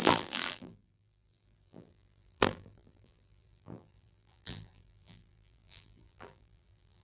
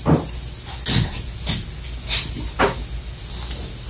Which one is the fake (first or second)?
first